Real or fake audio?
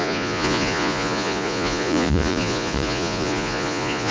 fake